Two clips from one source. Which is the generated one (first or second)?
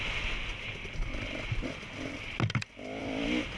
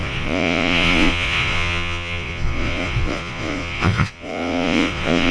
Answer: second